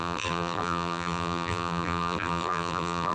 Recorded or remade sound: remade